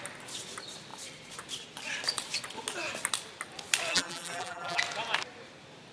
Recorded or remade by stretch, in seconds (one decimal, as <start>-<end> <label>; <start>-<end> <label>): 0.0-3.9 recorded; 3.9-4.8 remade; 4.8-5.9 recorded

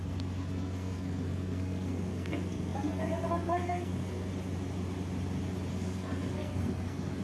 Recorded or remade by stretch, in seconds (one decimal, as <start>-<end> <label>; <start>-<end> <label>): 0.0-4.3 remade; 4.3-5.7 recorded; 5.7-7.2 remade